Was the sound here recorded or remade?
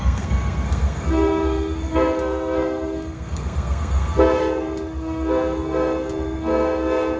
remade